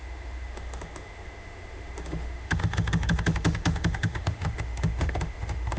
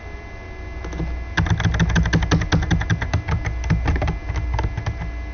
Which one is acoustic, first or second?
second